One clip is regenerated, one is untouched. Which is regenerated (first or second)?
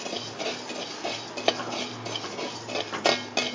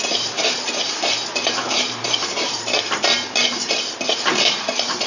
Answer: second